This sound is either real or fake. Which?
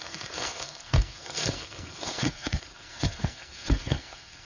fake